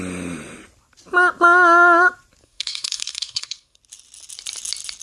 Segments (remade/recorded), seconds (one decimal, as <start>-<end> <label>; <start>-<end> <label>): 0.0-2.4 recorded; 2.4-3.8 remade; 3.8-5.0 recorded